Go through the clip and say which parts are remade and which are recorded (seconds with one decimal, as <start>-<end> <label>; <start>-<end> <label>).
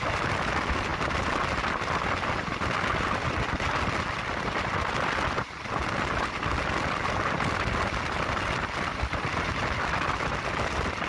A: 0.0-11.1 recorded